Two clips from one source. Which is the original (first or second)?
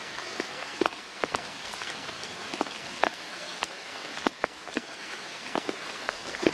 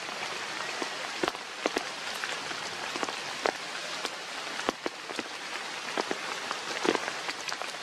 second